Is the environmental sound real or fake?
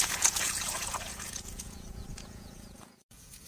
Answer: fake